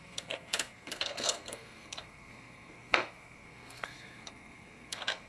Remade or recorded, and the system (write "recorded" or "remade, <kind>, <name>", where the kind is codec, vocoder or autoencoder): remade, codec, SNAC